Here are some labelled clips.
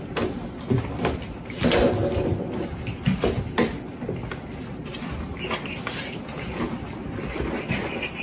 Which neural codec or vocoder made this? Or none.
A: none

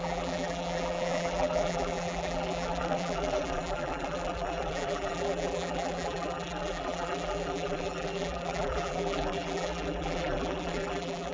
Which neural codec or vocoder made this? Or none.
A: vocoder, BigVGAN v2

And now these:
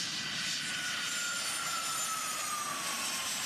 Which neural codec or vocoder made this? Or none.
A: none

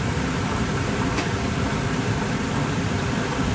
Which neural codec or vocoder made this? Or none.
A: vocoder, BigVGAN v2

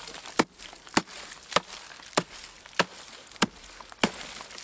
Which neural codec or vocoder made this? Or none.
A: vocoder, BigVGAN v2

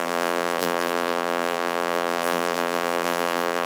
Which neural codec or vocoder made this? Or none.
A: vocoder, BigVGAN v2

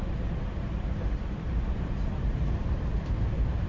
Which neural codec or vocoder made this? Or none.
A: vocoder, BigVGAN v2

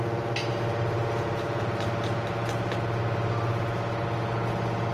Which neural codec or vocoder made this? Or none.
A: none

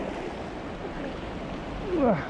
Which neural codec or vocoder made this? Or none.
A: none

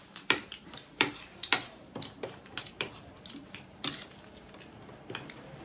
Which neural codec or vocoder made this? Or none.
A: vocoder, BigVGAN v2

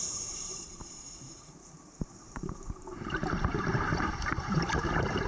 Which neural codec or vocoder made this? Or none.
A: vocoder, BigVGAN v2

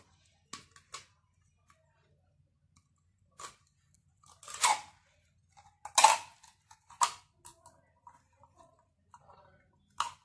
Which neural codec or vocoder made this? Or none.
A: none